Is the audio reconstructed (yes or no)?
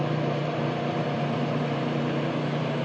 yes